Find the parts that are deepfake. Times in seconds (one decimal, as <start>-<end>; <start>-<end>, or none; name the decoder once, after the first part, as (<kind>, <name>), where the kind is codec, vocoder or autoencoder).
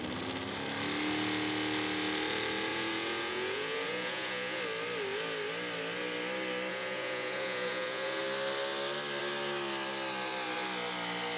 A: 2.7-4.6 (vocoder, Vocos); 6.7-8.2